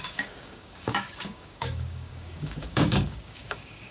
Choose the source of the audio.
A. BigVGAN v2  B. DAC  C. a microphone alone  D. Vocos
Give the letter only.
B